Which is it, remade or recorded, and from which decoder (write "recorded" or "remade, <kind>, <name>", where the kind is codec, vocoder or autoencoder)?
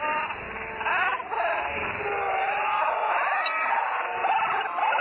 recorded